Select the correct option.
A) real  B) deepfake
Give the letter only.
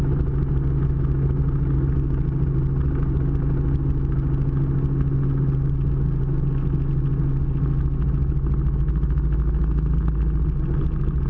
A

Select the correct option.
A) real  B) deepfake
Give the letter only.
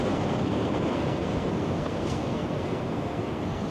B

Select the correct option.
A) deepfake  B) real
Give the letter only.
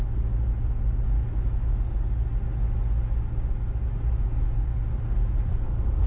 B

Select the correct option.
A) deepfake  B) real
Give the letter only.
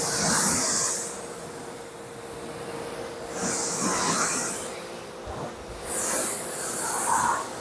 B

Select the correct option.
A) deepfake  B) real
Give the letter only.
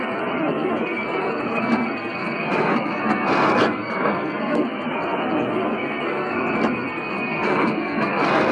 A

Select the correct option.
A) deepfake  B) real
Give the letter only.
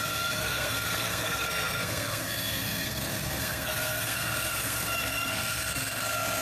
A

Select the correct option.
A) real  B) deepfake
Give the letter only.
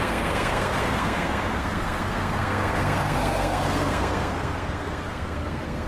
B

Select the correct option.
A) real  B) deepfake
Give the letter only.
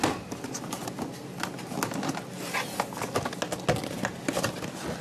A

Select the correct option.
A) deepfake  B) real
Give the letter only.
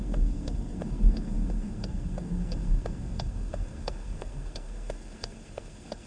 A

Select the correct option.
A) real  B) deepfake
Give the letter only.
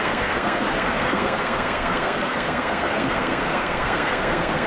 B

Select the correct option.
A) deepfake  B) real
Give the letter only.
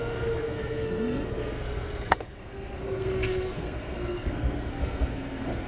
A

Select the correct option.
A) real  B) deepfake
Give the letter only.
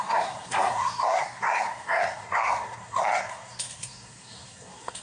B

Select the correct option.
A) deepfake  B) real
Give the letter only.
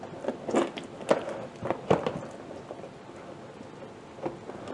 B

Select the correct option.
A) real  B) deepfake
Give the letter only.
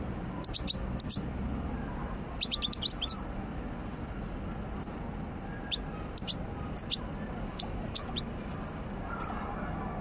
A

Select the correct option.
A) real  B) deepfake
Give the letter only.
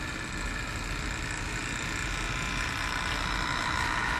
A